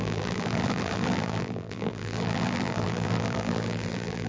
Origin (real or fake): fake